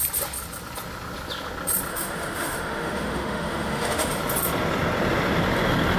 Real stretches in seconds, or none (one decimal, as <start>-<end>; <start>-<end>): 0.0-1.9; 4.1-6.0